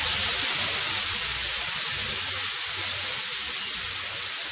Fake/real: real